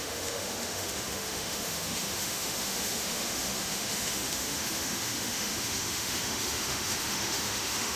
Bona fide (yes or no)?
no